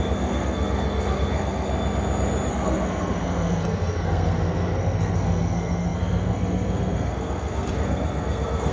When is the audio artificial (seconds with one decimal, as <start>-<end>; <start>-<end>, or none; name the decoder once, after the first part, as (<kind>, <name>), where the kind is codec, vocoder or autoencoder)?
0.0-1.7 (codec, SNAC); 2.5-8.7